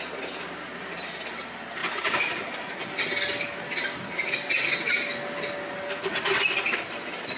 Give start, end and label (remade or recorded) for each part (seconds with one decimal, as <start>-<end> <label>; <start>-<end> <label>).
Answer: 0.0-7.4 recorded